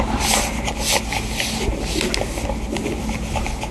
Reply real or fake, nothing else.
real